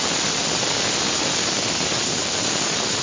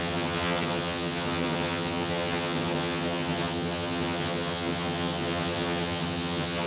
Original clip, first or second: first